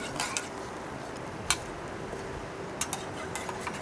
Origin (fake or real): real